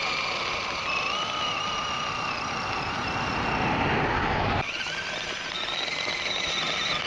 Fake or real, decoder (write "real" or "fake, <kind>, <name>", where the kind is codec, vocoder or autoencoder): real